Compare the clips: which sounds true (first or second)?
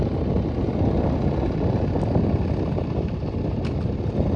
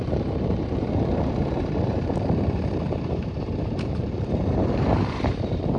first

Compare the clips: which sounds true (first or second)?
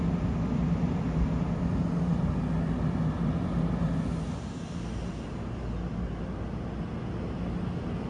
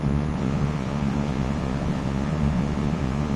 first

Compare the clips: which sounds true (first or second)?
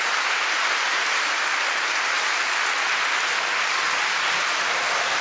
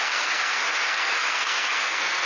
first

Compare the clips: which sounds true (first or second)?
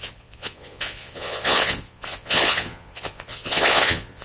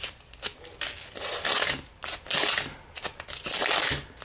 second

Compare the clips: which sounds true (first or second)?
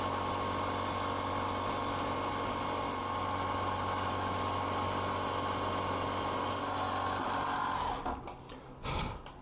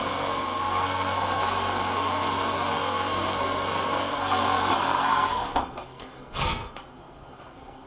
first